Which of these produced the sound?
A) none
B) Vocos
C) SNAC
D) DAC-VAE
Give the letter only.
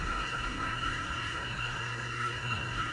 C